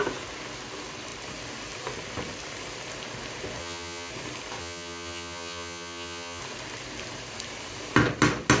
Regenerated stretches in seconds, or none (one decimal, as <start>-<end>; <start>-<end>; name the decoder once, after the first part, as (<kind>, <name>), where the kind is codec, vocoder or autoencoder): 3.6-4.1 (vocoder, HiFi-GAN); 4.6-6.4